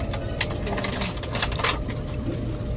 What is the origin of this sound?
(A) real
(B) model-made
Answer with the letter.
A